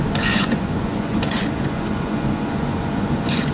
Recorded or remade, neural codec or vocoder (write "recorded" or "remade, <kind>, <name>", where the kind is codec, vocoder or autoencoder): remade, vocoder, Vocos